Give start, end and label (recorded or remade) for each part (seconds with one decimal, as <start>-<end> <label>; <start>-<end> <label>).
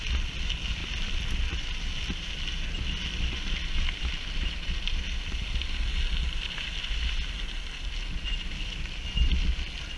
0.0-10.0 recorded